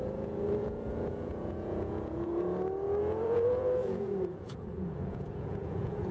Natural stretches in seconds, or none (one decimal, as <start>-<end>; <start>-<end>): 2.3-3.0